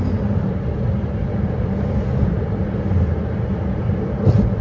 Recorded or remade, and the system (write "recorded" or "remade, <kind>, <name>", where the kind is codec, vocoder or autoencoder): recorded